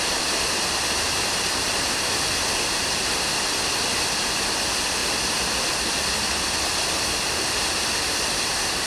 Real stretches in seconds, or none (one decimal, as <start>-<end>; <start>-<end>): 0.0-5.0; 7.1-8.9